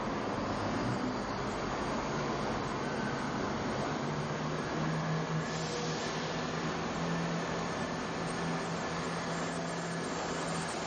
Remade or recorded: recorded